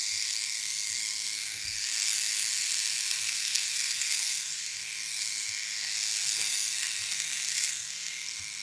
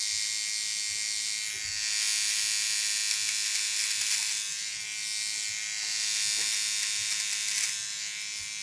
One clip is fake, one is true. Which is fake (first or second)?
first